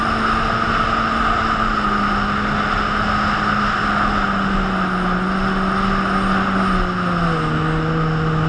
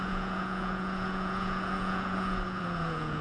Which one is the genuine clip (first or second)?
first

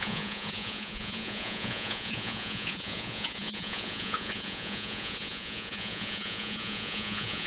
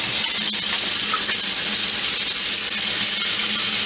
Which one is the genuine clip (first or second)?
second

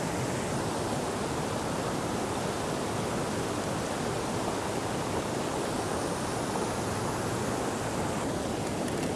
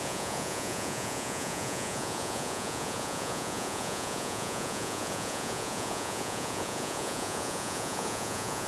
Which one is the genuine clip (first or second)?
first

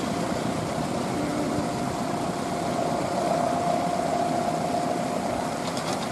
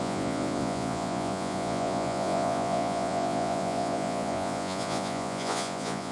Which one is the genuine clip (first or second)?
first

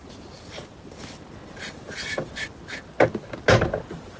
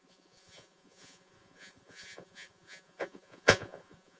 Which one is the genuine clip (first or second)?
first